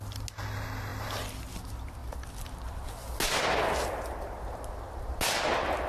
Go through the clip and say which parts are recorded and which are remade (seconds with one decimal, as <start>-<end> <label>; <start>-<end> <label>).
0.0-5.9 recorded